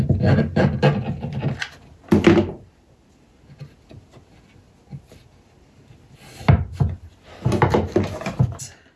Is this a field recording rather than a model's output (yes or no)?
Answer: yes